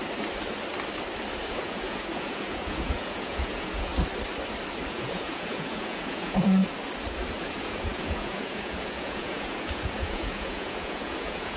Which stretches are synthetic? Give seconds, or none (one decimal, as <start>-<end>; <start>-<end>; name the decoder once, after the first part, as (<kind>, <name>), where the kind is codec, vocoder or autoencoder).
1.5-3.9 (vocoder, Vocos); 4.9-6.6; 7.4-11.6

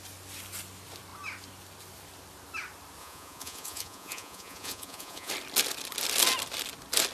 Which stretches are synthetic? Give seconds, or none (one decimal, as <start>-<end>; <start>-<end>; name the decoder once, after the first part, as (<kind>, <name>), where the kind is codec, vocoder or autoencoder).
3.0-5.3 (vocoder, Vocos)

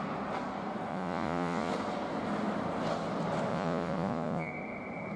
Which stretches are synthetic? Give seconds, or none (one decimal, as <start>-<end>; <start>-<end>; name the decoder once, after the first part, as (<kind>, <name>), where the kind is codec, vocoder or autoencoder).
0.9-1.7 (vocoder, Vocos); 3.5-4.5

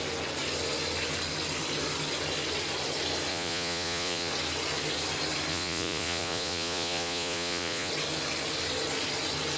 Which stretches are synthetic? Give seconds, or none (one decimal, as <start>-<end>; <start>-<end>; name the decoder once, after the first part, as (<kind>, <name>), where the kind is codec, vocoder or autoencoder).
3.3-4.3 (vocoder, Vocos); 5.5-7.9